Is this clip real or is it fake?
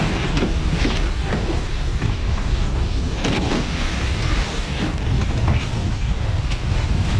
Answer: fake